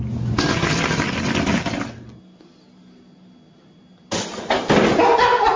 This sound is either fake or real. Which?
real